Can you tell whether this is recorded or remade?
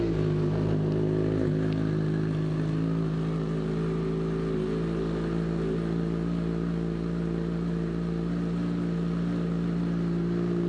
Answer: recorded